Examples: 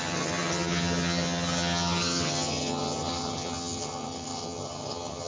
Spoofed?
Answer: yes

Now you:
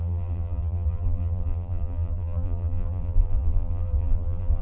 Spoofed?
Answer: yes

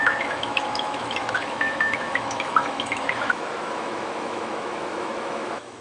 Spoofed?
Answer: yes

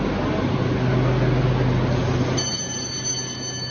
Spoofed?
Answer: no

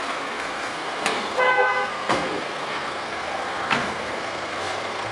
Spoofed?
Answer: yes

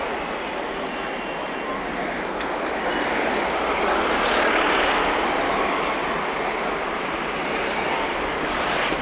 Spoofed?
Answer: no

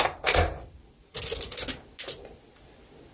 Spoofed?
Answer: no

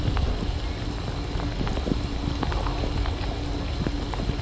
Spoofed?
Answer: no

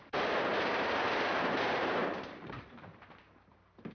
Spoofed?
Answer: yes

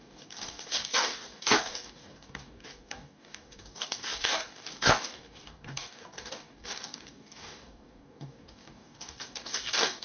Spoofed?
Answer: yes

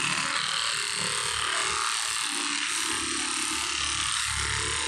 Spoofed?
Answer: no